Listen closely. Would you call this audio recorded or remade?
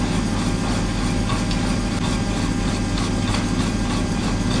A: recorded